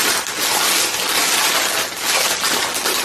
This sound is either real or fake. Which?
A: real